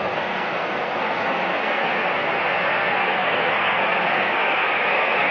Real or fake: fake